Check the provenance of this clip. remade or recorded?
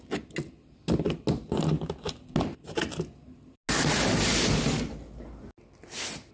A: recorded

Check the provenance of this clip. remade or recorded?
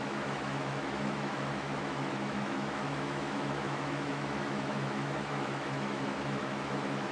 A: remade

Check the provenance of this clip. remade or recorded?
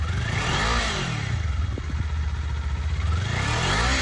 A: recorded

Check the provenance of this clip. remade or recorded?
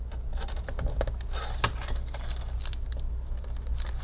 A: recorded